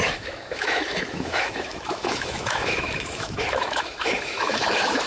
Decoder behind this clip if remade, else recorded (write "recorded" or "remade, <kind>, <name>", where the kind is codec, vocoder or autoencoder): remade, autoencoder, DAC-VAE